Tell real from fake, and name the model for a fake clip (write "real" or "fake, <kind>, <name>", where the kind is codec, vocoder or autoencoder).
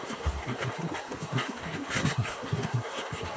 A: fake, codec, SNAC